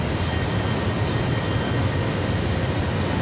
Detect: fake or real real